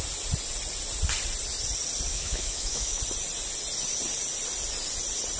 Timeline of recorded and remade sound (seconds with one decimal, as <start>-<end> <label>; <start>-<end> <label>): 0.0-2.1 recorded; 2.1-3.0 remade; 3.0-5.4 recorded